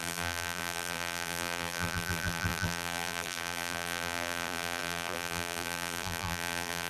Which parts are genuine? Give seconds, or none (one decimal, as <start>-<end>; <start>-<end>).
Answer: none